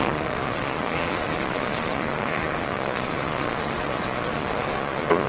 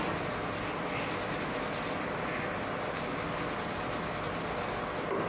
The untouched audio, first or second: second